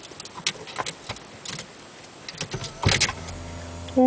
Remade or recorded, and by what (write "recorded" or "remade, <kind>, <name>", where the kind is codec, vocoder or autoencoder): recorded